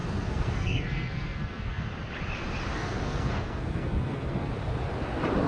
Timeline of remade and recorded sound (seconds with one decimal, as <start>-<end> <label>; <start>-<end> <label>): 0.0-1.8 remade; 1.8-2.7 recorded; 2.7-4.5 remade; 4.5-5.5 recorded